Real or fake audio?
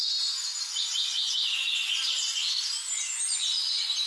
real